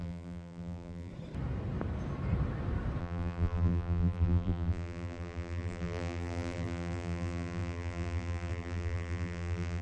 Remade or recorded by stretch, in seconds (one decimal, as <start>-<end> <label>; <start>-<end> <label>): 0.0-1.1 remade; 1.1-3.0 recorded; 3.0-9.8 remade